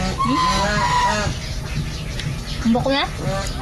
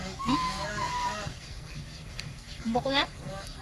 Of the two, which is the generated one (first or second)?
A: second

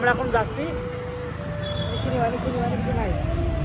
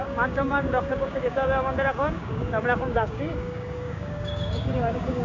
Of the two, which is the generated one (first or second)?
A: second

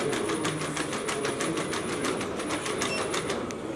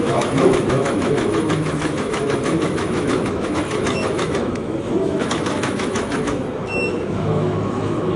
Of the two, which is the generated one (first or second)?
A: second